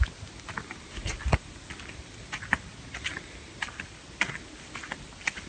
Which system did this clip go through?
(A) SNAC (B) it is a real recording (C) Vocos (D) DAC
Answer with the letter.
B